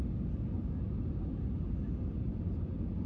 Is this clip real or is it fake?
real